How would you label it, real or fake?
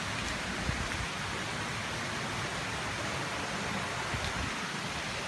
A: real